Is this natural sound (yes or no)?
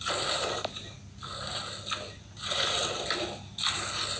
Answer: yes